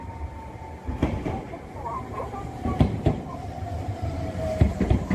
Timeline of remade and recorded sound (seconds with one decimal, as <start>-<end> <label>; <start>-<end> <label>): 0.0-1.0 recorded; 1.0-4.1 remade; 4.1-5.1 recorded